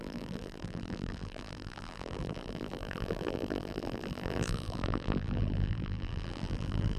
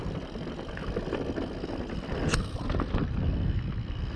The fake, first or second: first